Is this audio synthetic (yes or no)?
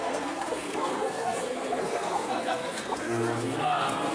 yes